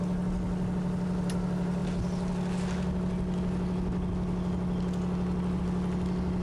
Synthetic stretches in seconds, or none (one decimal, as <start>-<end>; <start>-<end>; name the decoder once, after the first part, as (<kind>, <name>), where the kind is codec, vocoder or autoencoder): none